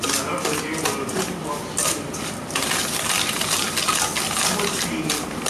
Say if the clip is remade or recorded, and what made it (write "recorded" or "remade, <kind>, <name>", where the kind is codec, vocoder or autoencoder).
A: recorded